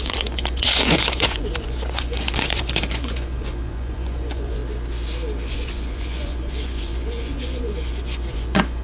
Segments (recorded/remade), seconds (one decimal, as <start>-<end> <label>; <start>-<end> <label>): 0.0-4.6 remade; 4.6-5.5 recorded; 5.5-8.8 remade